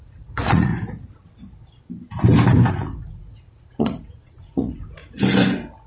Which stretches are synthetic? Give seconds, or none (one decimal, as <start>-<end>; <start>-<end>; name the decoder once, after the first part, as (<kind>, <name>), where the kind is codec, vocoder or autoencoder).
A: 0.0-0.7 (vocoder, Vocos); 2.7-5.0